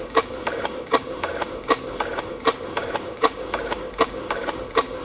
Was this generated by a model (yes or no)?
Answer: yes